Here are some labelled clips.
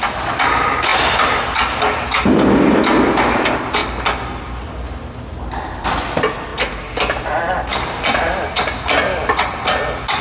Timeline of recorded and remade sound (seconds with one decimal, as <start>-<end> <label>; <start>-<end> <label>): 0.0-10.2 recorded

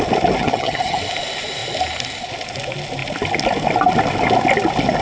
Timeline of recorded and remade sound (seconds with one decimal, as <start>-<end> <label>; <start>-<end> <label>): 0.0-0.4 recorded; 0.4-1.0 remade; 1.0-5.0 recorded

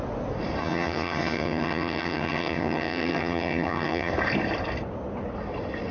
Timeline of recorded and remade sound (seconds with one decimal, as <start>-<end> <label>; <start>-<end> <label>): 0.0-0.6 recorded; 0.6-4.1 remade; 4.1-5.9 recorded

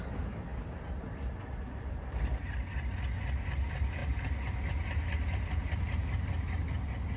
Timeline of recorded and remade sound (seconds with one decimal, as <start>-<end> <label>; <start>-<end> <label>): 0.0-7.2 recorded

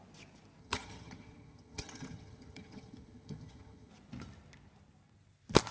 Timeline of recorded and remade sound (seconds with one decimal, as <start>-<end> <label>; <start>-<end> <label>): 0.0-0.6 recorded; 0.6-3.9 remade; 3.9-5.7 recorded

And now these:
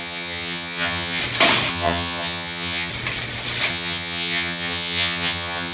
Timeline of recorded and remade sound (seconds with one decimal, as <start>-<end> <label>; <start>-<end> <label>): 0.0-1.2 remade; 1.2-1.7 recorded; 1.7-2.9 remade; 2.9-3.7 recorded; 3.7-5.7 remade

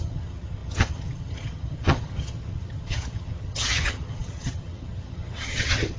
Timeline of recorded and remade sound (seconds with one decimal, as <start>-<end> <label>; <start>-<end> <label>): 0.0-6.0 remade

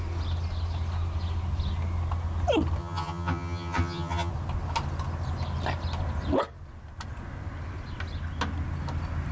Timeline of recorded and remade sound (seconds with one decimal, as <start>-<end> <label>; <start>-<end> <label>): 0.0-2.8 recorded; 2.8-4.3 remade; 4.3-9.3 recorded